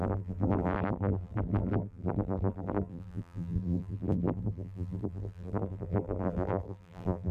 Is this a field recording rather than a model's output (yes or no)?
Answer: no